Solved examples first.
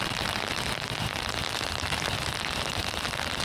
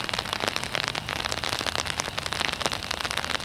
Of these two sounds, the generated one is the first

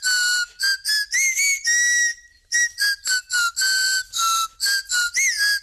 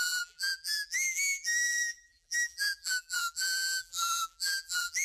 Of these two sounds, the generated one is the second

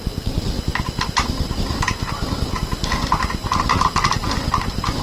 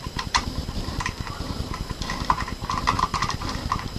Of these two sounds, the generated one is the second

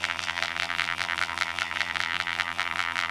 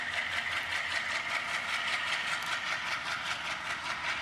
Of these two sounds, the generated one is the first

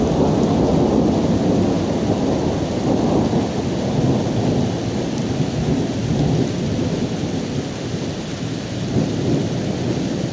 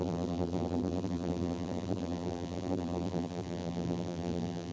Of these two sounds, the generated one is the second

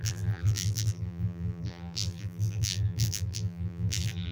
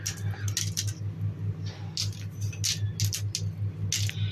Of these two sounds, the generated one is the first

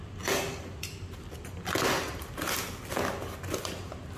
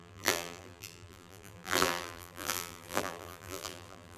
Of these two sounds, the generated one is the second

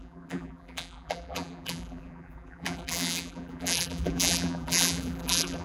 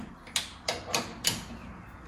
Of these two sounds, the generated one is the first